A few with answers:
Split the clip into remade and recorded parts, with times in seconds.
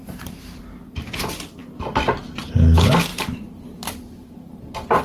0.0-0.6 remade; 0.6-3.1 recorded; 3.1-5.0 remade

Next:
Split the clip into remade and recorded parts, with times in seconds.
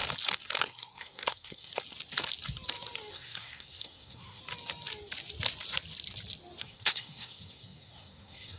0.0-0.6 recorded; 0.6-1.7 remade; 1.7-3.1 recorded; 3.1-4.4 remade; 4.4-6.6 recorded; 6.6-8.6 remade